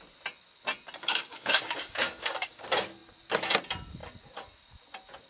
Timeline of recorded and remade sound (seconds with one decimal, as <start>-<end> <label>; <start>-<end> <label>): 0.0-1.0 recorded; 1.0-2.6 remade; 2.6-5.3 recorded